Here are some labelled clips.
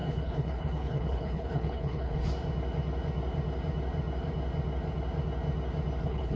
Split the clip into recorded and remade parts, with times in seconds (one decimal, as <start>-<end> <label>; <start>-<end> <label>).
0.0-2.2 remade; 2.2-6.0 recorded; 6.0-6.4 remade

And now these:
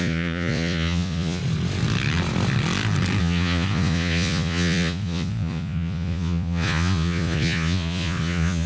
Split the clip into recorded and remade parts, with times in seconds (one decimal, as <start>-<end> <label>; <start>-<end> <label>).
0.0-1.4 remade; 1.4-3.2 recorded; 3.2-8.7 remade

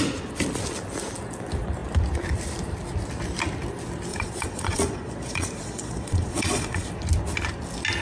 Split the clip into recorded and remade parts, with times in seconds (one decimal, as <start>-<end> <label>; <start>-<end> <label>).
0.0-4.1 recorded; 4.1-6.9 remade; 6.9-8.0 recorded

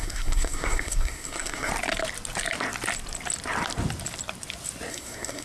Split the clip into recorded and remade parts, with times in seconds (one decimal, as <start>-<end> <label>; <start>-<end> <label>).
0.0-1.7 remade; 1.7-4.9 recorded; 4.9-5.4 remade

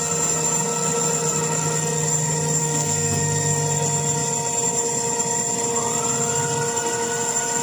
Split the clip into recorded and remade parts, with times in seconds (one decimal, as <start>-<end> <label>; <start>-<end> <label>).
0.0-2.6 recorded; 2.6-3.2 remade; 3.2-7.6 recorded

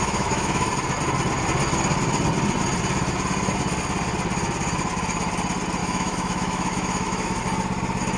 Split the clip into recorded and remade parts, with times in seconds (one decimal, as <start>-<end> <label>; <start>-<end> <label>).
0.0-0.7 remade; 0.7-5.8 recorded; 5.8-7.4 remade; 7.4-8.2 recorded